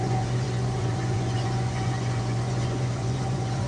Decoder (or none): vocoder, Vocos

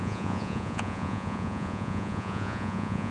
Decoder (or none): vocoder, Vocos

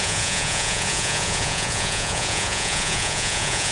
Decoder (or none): vocoder, Vocos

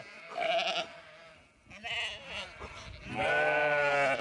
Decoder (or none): none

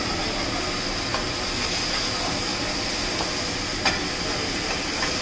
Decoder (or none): none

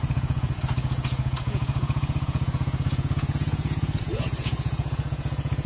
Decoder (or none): vocoder, Vocos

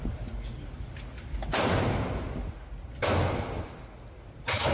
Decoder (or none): none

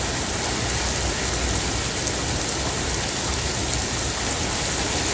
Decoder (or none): none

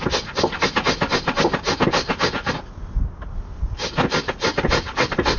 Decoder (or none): none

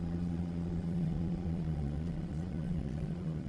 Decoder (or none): vocoder, Vocos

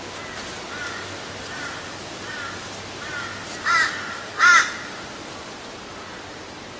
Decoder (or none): none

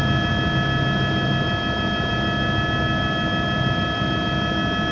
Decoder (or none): none